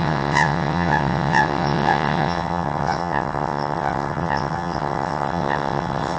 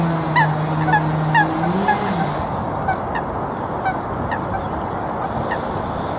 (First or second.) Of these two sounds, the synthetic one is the first